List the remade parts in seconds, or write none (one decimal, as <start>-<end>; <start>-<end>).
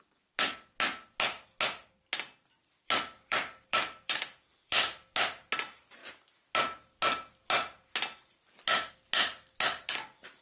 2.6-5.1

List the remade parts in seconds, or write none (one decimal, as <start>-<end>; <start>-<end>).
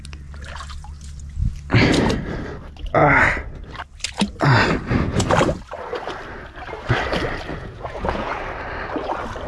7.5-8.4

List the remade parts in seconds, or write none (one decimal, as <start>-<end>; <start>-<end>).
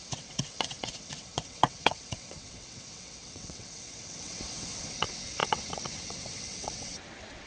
0.0-7.5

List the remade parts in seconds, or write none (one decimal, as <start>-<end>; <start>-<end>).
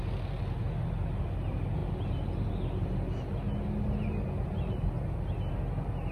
none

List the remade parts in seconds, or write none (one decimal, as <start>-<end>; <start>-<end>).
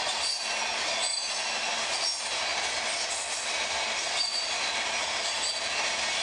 none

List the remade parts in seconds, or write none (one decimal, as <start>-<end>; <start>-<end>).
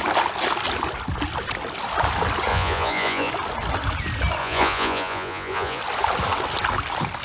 2.5-3.3; 4.4-5.8